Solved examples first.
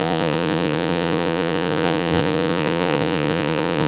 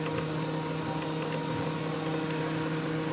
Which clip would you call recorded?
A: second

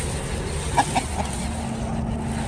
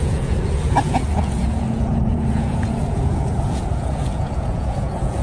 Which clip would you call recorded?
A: first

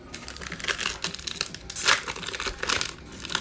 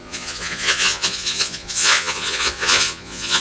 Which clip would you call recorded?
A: first